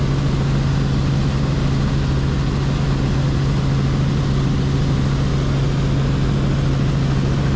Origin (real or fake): real